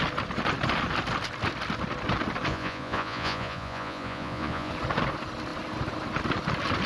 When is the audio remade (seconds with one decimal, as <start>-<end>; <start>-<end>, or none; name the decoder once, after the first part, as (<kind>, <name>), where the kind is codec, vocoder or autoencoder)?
2.5-4.7 (vocoder, Vocos)